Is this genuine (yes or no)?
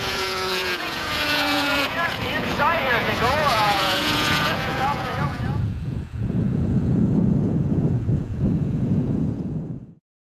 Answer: no